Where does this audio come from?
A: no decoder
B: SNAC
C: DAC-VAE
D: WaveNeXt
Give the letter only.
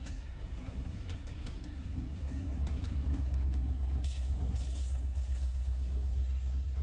B